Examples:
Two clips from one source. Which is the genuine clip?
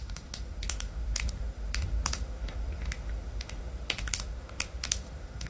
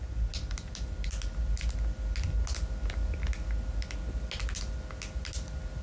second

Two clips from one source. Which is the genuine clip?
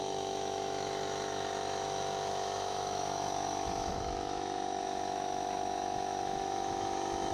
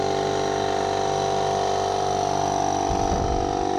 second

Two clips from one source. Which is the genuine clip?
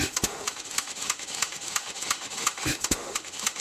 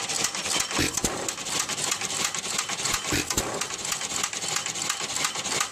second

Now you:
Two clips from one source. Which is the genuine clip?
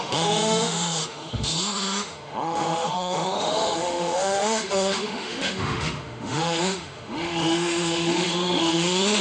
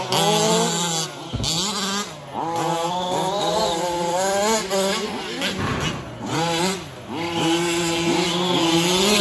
second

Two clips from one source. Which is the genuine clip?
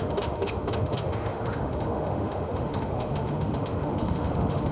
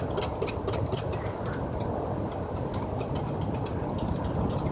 second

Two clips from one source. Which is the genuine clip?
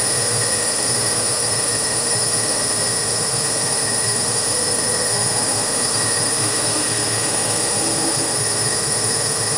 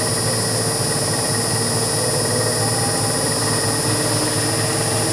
second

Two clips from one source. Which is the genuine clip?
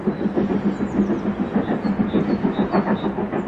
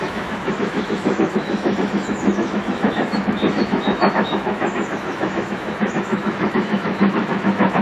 first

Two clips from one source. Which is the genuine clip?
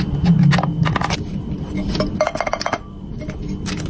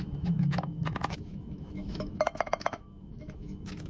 first